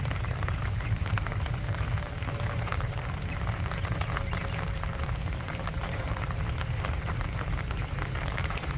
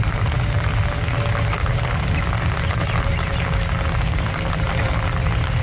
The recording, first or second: second